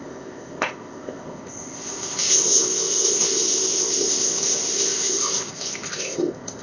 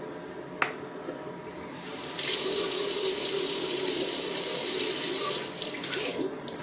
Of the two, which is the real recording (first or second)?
second